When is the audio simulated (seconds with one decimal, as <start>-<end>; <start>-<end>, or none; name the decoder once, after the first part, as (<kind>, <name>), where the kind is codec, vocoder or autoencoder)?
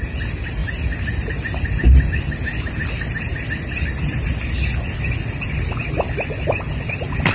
none